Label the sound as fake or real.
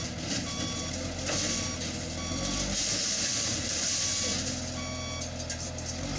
real